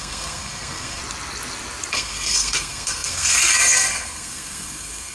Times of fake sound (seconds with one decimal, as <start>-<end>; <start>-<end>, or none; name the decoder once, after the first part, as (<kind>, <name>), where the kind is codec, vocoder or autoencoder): 0.0-1.0 (codec, SNAC); 1.9-5.1